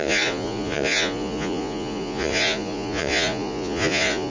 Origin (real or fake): fake